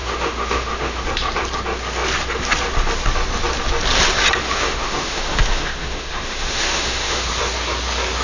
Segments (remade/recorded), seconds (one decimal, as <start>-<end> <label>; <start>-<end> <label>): 0.0-1.0 remade; 1.0-4.4 recorded; 4.4-7.3 remade; 7.3-8.2 recorded